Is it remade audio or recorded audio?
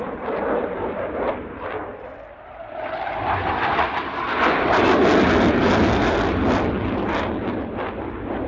recorded